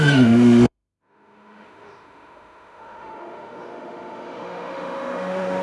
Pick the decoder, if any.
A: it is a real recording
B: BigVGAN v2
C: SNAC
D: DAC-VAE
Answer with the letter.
D